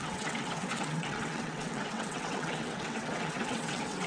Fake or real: fake